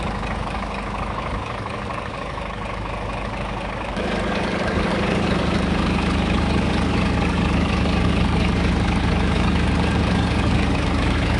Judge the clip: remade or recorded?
remade